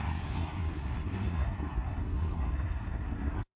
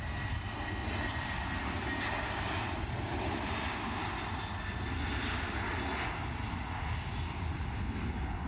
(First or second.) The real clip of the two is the second